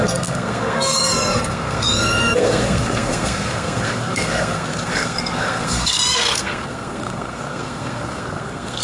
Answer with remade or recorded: remade